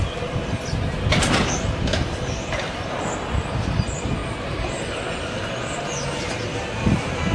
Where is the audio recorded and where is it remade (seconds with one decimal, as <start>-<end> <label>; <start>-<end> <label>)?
0.0-7.3 recorded